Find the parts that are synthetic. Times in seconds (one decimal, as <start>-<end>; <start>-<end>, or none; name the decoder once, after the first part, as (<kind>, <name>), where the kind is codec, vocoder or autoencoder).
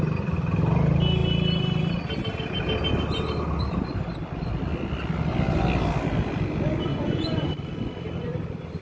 6.9-7.5 (vocoder, Vocos)